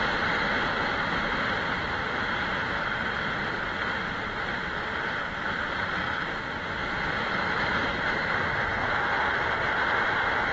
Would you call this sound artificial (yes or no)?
no